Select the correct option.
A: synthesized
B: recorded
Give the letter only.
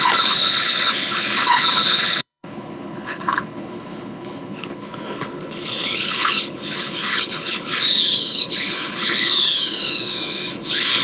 A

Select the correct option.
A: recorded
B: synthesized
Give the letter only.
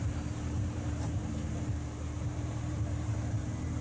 B